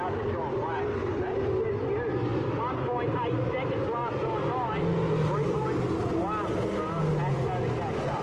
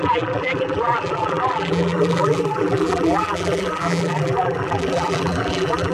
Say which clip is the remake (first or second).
second